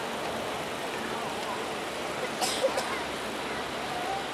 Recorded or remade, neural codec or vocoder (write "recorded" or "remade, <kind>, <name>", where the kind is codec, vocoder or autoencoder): remade, vocoder, BigVGAN v2